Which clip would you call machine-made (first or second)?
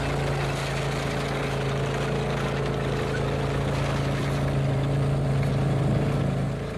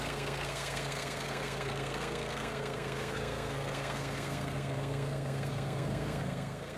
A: second